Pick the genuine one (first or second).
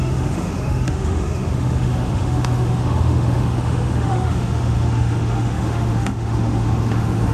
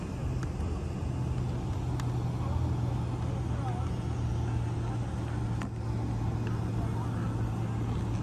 second